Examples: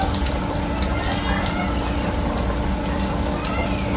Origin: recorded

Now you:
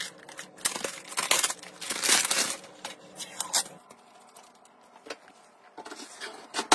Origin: recorded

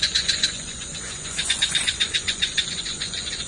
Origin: remade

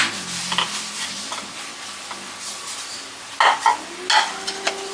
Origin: recorded